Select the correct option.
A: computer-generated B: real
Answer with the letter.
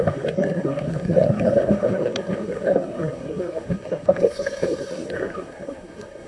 A